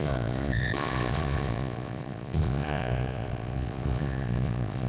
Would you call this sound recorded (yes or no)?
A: no